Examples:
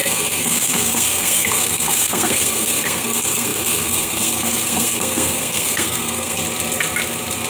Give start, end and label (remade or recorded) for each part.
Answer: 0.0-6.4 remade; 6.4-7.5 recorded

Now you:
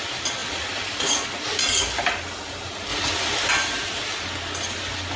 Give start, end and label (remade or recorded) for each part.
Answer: 0.0-5.2 recorded

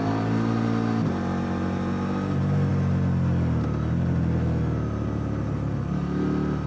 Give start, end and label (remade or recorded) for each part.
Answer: 0.0-6.7 recorded